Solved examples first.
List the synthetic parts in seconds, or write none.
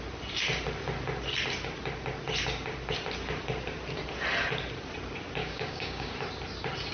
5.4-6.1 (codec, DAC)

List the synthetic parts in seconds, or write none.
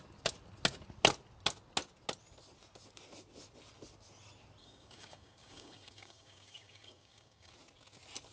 4.6-7.5 (codec, DAC)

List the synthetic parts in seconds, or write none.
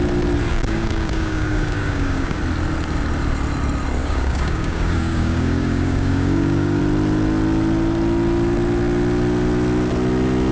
0.5-2.4 (codec, DAC); 4.0-6.8